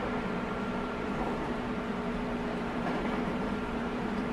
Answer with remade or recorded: remade